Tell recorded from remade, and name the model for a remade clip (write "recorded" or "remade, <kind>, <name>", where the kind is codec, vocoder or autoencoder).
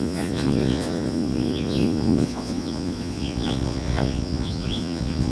remade, vocoder, Vocos